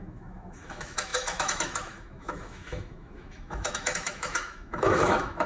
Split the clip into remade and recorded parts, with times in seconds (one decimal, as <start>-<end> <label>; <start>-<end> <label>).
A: 0.0-5.5 remade